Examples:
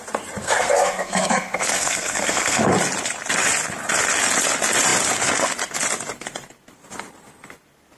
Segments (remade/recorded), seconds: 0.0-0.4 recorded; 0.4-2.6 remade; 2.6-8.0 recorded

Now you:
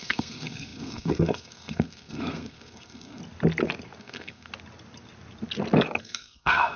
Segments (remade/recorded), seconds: 0.0-3.2 remade; 3.2-4.0 recorded; 4.0-4.5 remade; 4.5-6.0 recorded; 6.0-6.8 remade

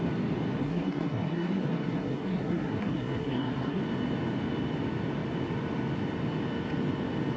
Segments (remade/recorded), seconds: 0.0-0.6 recorded; 0.6-3.8 remade; 3.8-7.4 recorded

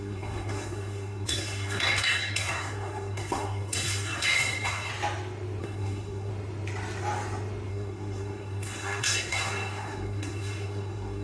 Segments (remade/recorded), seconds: 0.0-4.9 remade; 4.9-5.6 recorded; 5.6-6.3 remade; 6.3-7.7 recorded; 7.7-11.2 remade